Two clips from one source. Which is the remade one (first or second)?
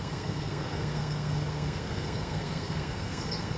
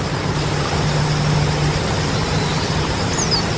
first